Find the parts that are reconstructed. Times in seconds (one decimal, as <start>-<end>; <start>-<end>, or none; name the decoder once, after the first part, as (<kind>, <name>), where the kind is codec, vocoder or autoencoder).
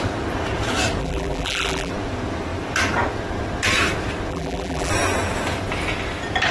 1.0-1.9 (vocoder, BigVGAN v2); 4.3-4.9